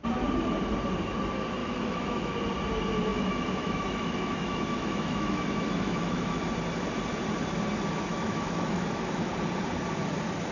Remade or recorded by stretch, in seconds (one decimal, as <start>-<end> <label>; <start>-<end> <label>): 0.0-1.6 recorded; 1.6-2.3 remade; 2.3-3.1 recorded; 3.1-6.5 remade; 6.5-8.1 recorded; 8.1-9.3 remade; 9.3-10.5 recorded